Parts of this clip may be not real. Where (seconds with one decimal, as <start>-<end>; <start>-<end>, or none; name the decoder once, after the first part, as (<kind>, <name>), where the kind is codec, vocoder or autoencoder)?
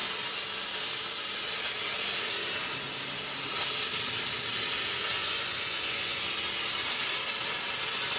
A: 5.2-6.2 (vocoder, Vocos)